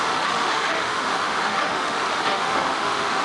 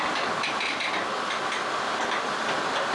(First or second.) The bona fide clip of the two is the second